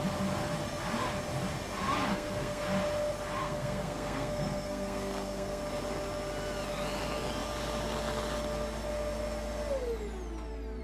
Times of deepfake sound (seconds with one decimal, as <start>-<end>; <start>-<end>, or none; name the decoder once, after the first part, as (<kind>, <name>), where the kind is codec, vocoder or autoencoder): 2.1-2.6 (codec, SNAC); 3.4-5.6